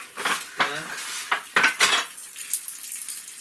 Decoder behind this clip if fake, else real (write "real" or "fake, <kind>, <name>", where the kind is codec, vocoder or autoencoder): real